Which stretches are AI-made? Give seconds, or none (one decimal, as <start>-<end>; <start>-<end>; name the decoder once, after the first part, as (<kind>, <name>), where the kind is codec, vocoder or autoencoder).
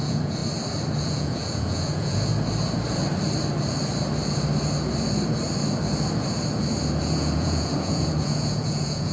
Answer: 0.0-0.4 (vocoder, Vocos); 1.0-2.3; 7.0-9.1